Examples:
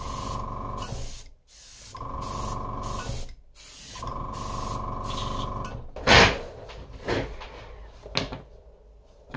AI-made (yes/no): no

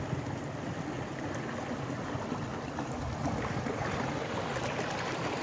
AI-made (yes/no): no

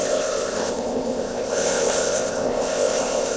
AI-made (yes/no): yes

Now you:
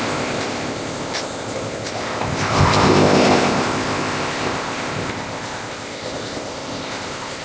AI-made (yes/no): yes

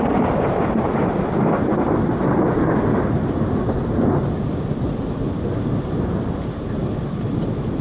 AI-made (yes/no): no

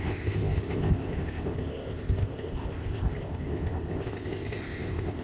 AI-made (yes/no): yes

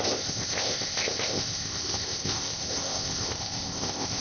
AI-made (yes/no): yes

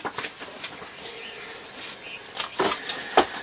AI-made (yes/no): no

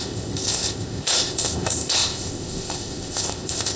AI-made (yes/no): yes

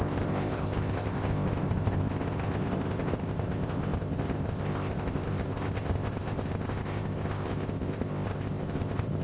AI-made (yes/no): yes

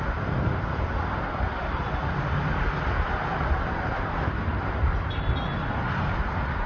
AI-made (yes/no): no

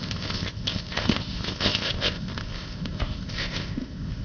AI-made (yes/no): yes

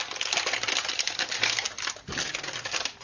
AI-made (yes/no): no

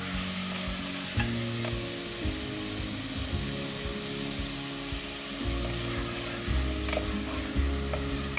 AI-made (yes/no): no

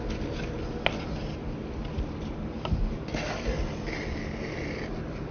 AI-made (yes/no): no